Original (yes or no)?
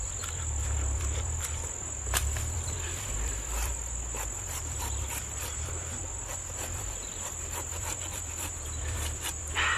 no